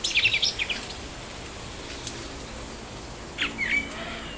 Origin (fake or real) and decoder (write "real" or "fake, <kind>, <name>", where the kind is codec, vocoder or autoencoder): real